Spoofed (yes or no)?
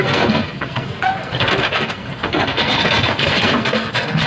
yes